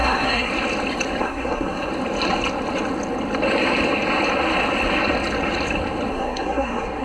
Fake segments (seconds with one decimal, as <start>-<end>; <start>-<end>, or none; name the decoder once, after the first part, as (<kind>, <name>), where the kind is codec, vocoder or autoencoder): 0.0-0.5 (codec, SNAC); 1.2-1.9; 6.1-7.0

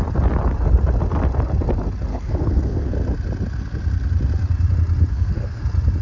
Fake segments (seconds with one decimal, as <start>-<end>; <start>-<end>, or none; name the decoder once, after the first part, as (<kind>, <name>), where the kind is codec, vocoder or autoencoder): 2.1-2.9 (codec, SNAC); 5.1-5.6

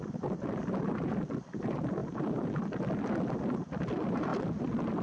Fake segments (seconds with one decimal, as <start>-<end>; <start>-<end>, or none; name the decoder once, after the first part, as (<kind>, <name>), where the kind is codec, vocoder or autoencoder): 4.3-5.0 (vocoder, BigVGAN v2)

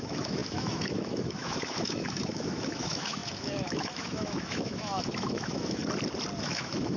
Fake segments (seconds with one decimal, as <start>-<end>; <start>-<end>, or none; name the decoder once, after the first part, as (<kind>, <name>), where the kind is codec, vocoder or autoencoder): 0.0-5.8 (autoencoder, DAC-VAE); 6.4-7.0

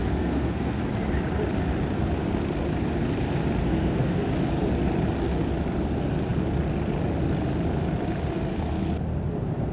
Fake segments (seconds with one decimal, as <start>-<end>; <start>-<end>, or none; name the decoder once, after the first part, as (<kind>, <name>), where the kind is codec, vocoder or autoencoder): 0.0-0.8 (codec, SNAC); 3.6-4.3